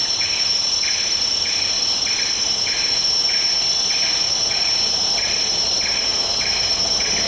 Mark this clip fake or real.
real